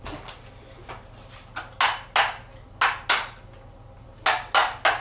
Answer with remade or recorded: recorded